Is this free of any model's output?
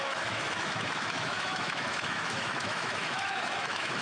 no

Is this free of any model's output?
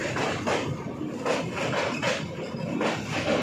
yes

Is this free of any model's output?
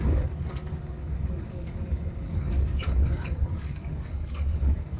no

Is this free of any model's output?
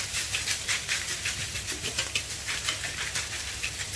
yes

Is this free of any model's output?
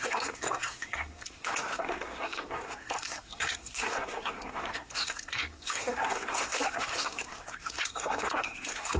no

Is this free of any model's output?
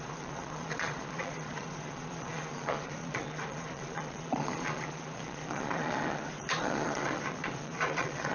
no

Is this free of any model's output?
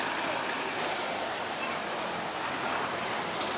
yes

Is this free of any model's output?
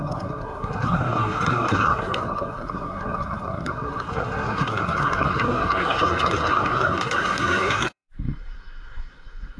no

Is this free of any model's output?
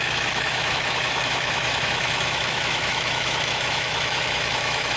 no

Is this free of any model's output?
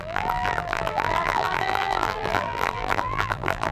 no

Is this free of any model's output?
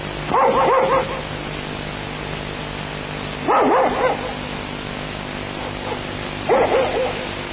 yes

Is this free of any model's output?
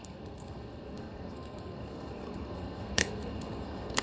no